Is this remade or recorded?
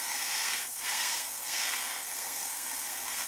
remade